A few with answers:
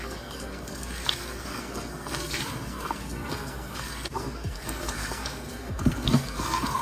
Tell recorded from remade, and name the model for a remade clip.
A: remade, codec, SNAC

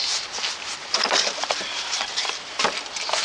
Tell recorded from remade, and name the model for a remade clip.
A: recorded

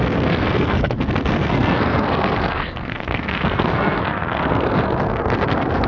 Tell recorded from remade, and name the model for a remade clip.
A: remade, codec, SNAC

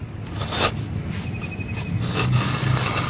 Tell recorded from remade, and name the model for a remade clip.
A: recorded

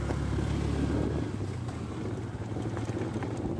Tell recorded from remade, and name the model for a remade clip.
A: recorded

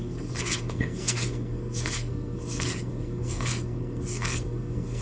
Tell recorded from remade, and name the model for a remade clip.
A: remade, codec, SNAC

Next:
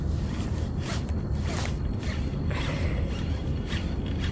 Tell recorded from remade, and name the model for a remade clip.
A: recorded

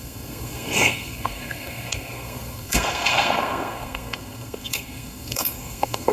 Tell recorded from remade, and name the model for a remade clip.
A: remade, codec, SNAC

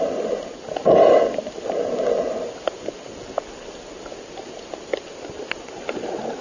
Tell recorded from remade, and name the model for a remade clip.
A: recorded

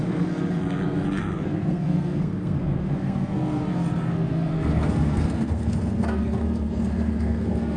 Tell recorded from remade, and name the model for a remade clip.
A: remade, codec, SNAC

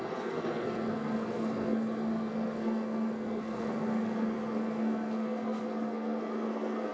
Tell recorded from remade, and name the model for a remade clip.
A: remade, codec, SNAC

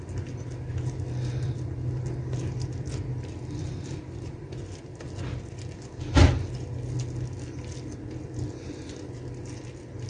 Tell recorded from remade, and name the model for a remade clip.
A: recorded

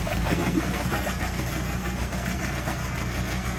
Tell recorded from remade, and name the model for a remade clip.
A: remade, codec, SNAC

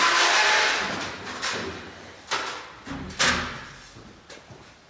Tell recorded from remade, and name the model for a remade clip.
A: recorded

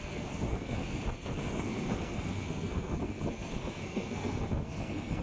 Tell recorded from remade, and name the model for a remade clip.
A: remade, codec, SNAC